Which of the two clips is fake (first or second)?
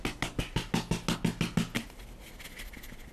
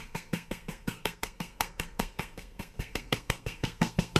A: second